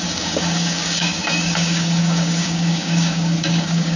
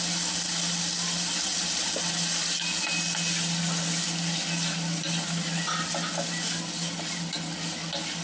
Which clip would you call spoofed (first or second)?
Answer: first